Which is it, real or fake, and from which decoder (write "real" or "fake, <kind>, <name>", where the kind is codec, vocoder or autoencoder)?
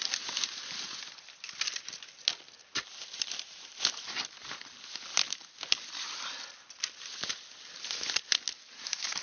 real